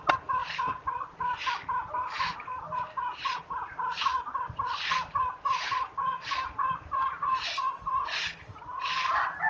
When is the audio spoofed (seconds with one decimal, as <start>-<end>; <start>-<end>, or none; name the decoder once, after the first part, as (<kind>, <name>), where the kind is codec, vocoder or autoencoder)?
none